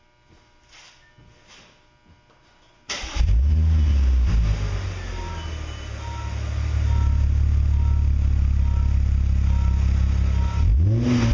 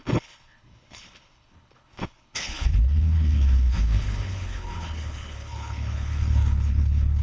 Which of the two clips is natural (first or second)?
first